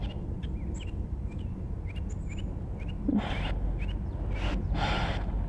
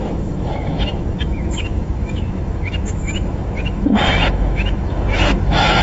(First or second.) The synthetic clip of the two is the second